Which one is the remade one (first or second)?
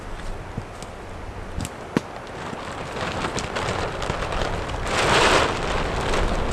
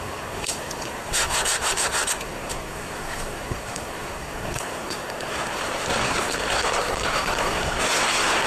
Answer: second